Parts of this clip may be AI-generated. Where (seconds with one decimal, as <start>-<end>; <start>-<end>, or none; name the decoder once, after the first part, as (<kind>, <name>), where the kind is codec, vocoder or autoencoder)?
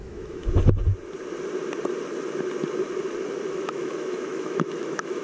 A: 0.0-0.4 (autoencoder, DAC-VAE); 3.5-5.2